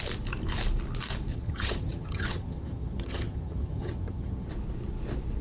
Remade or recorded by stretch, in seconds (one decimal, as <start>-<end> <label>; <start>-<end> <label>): 0.0-1.3 recorded; 1.3-4.5 remade; 4.5-5.4 recorded